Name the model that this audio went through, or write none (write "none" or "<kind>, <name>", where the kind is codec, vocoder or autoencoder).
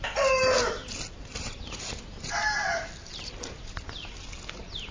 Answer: none